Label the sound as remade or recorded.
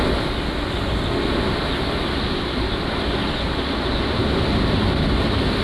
recorded